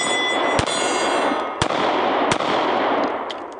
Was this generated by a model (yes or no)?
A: no